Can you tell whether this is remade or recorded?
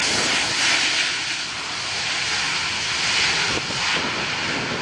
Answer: recorded